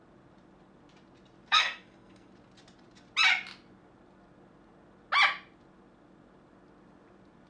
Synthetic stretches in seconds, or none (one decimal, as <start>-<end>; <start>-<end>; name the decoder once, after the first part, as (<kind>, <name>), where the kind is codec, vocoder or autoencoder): 1.5-2.3 (codec, SNAC)